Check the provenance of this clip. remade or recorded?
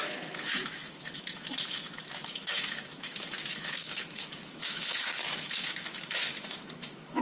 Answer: remade